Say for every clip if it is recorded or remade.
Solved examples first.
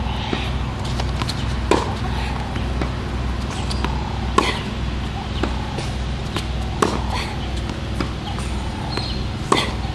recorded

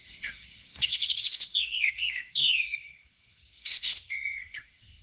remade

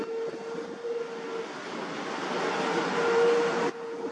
recorded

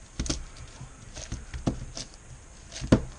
recorded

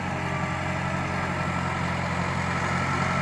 recorded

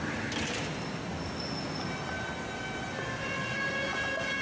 recorded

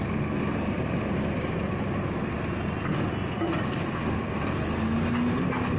recorded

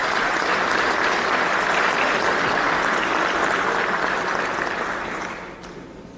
recorded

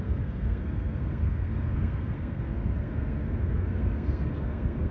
remade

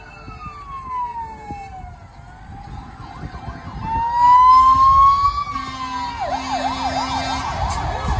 recorded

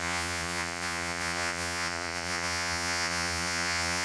remade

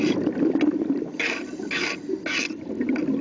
recorded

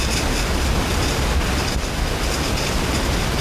recorded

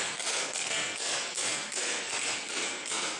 remade